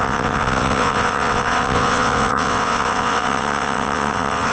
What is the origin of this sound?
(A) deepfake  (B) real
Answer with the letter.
A